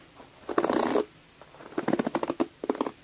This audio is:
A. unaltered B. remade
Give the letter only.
A